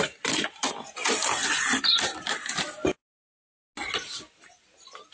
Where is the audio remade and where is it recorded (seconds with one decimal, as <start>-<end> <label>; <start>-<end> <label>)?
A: 0.0-5.1 recorded